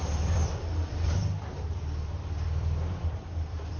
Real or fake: fake